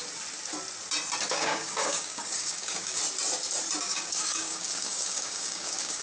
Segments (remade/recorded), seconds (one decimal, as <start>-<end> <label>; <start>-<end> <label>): 0.0-1.3 recorded; 1.3-3.0 remade; 3.0-3.8 recorded; 3.8-6.0 remade